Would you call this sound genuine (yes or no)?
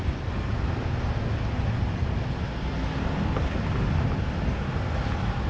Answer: yes